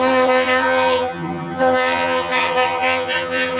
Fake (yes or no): yes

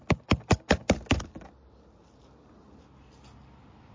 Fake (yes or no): no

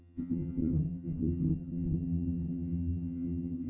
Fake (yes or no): yes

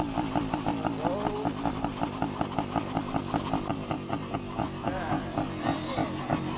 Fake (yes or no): no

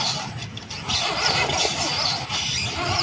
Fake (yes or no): no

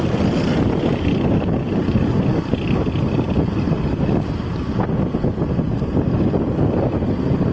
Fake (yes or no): no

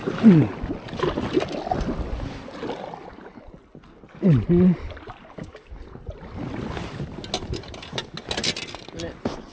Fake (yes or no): no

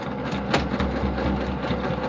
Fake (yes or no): no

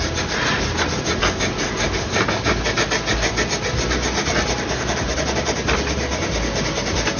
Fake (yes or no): no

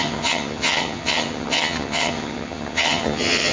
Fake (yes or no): yes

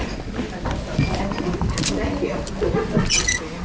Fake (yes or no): no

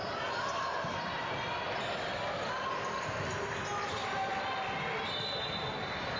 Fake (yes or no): no